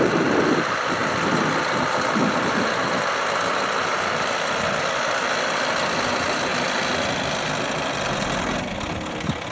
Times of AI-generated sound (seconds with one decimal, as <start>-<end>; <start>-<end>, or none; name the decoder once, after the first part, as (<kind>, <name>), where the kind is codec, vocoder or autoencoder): 3.9-5.0 (vocoder, BigVGAN v2)